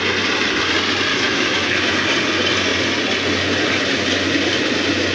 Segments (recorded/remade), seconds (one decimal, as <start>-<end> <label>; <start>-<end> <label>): 0.0-1.1 recorded; 1.1-1.9 remade; 1.9-5.1 recorded